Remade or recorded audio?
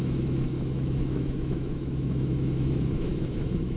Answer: remade